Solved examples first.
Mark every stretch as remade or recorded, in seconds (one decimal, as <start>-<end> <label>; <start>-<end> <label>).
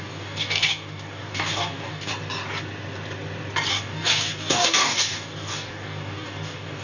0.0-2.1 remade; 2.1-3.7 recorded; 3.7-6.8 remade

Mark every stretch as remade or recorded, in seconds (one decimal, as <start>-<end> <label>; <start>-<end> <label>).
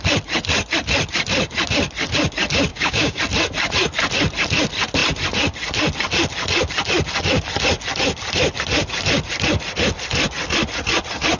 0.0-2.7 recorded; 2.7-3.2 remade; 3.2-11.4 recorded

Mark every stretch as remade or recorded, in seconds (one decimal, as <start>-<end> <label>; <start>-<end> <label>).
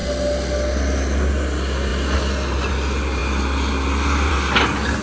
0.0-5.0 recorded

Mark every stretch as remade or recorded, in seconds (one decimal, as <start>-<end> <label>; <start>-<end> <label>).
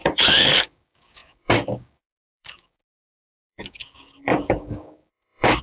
0.0-5.6 remade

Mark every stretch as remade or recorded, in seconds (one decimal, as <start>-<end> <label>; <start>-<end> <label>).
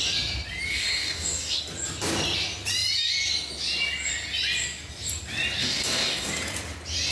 0.0-0.7 recorded; 0.7-1.6 remade; 1.6-5.6 recorded; 5.6-6.3 remade; 6.3-7.1 recorded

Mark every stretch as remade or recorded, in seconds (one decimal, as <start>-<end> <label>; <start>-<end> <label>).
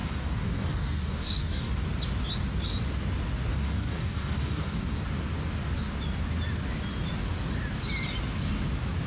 0.0-1.7 remade; 1.7-3.5 recorded; 3.5-5.0 remade; 5.0-9.1 recorded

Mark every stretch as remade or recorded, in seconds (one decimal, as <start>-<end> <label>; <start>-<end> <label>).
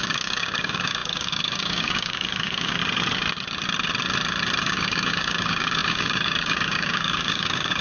0.0-2.8 remade; 2.8-4.6 recorded; 4.6-7.8 remade